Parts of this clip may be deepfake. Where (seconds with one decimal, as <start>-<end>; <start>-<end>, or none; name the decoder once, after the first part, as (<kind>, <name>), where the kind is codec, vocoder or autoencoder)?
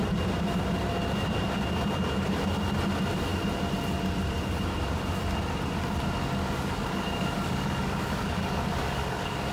6.4-9.5 (codec, DAC)